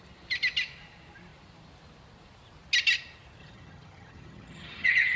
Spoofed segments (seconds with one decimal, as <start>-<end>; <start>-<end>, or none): 3.4-5.2